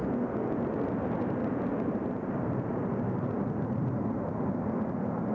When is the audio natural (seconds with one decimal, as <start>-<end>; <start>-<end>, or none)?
0.0-1.4; 4.4-5.3